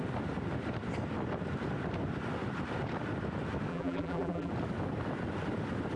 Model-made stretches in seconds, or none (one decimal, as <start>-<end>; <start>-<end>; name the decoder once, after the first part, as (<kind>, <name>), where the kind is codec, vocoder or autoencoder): 3.7-4.5 (vocoder, BigVGAN v2)